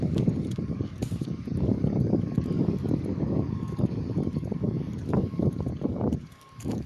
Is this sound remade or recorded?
remade